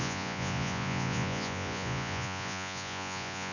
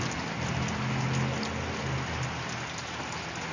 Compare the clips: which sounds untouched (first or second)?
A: second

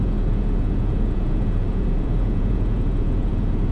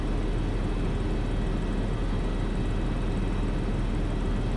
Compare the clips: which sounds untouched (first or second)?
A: second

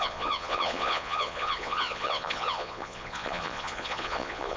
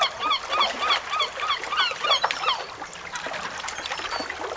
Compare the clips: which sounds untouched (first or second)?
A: second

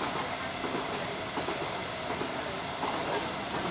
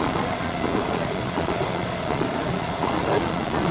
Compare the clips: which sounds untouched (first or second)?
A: first